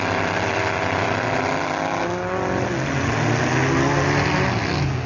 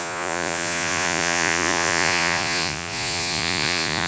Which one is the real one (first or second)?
first